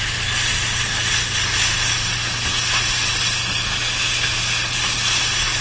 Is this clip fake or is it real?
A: real